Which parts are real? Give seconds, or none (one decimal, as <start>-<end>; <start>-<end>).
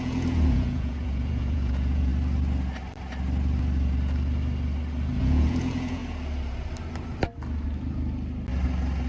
2.1-5.2; 6.0-9.1